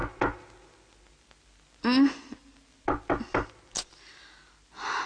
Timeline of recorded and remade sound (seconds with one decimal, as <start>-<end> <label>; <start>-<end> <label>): 0.0-5.1 recorded